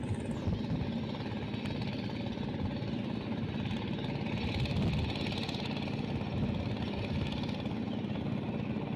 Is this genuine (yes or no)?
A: yes